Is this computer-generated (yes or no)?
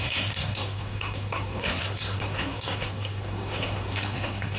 yes